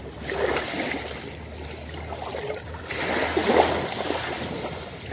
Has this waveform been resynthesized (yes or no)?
no